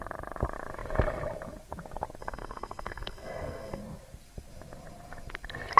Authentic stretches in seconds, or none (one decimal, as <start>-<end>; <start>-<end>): 0.0-2.2; 3.8-5.8